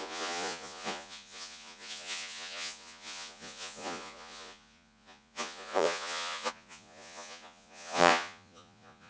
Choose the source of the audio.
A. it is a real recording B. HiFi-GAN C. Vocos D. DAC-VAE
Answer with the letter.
C